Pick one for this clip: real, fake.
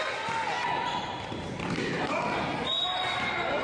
real